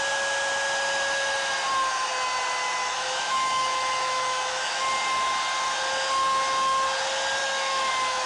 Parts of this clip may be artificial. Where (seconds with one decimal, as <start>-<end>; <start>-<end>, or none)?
2.8-4.8; 7.4-7.9